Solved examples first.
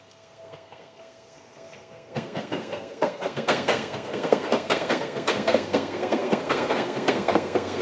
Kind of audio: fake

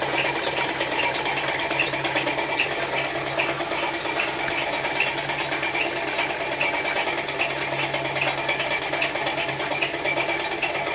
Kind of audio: real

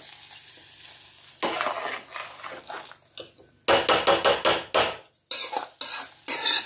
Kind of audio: real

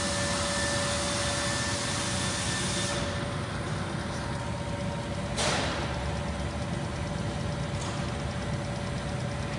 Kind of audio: real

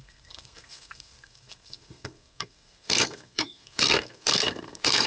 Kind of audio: fake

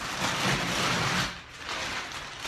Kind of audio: real